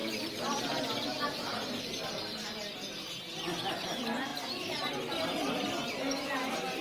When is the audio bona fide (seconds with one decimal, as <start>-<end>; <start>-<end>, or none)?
1.9-6.8